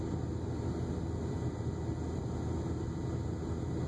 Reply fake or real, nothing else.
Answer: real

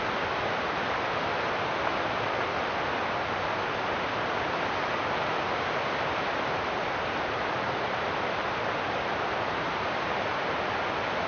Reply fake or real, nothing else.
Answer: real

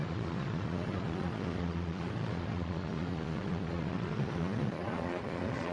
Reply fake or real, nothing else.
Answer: fake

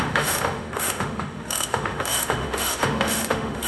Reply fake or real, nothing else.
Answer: fake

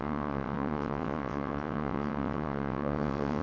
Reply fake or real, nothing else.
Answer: fake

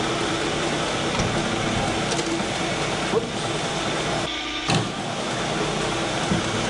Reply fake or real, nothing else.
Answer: real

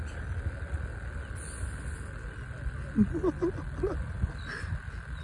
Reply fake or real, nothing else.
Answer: real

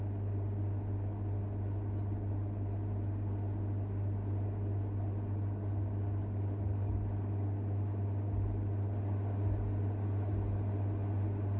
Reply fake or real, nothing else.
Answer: real